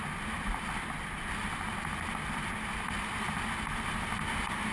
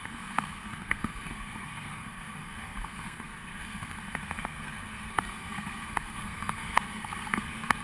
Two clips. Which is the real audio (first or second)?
first